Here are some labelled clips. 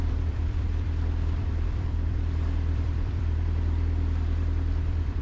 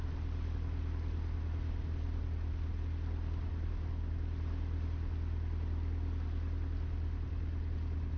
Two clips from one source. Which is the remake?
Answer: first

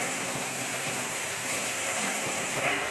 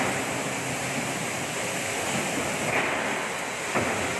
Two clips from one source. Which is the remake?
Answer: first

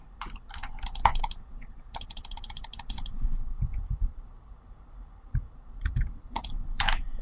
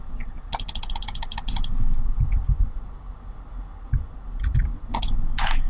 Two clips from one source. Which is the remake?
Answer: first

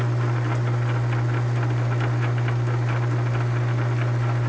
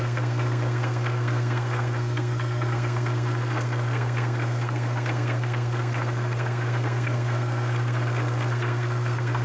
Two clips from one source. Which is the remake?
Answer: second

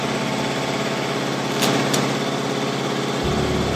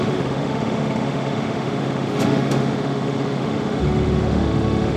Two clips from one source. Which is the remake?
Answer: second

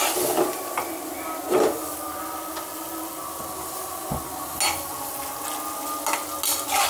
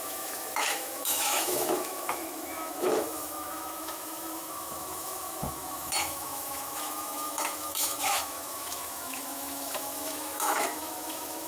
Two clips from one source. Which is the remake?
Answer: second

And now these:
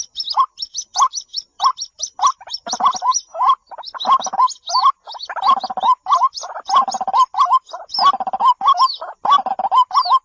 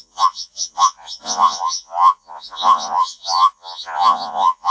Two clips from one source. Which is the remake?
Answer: second